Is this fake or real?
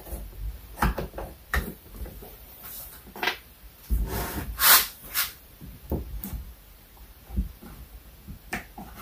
fake